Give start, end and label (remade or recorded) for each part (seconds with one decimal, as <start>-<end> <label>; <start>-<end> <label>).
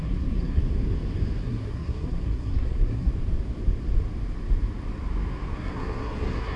0.0-0.6 remade; 0.6-1.4 recorded; 1.4-3.1 remade; 3.1-5.6 recorded; 5.6-6.6 remade